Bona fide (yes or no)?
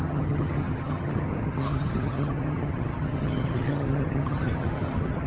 no